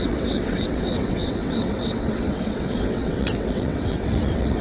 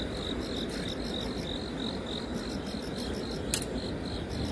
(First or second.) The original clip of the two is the second